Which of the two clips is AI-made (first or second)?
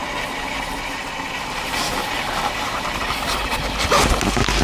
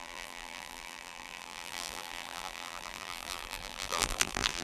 second